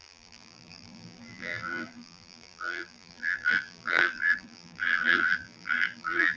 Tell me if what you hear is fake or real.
fake